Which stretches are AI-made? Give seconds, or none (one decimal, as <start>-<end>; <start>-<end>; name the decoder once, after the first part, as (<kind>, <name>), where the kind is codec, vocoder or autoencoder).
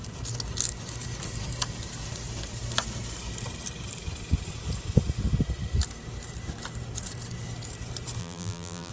8.2-8.9 (vocoder, BigVGAN v2)